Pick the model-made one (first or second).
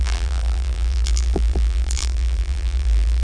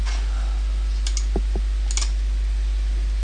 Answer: first